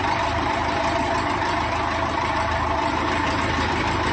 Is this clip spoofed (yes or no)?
yes